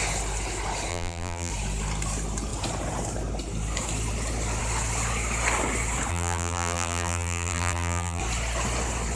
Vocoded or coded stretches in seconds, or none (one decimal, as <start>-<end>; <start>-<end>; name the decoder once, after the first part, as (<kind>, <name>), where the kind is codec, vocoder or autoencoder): 0.9-1.5 (vocoder, BigVGAN v2); 6.1-8.2